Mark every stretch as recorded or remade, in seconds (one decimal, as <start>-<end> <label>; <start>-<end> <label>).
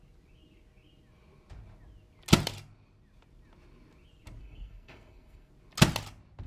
0.0-4.4 recorded; 4.4-5.5 remade; 5.5-6.5 recorded